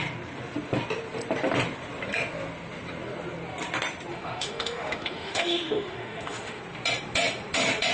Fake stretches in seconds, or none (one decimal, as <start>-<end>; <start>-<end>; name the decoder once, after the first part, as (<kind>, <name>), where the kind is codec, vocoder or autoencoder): 4.1-6.6 (autoencoder, DAC-VAE)